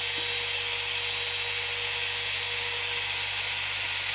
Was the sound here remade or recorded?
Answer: recorded